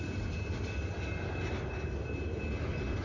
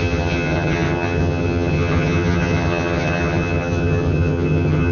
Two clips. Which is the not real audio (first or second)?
second